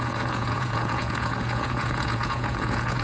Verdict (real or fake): fake